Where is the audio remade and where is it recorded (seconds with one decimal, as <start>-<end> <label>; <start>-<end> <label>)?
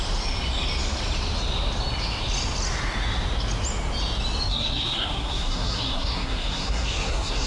0.0-4.5 recorded; 4.5-7.5 remade